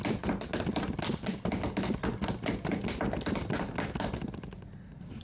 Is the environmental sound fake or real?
real